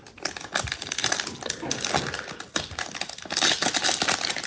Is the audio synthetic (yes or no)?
no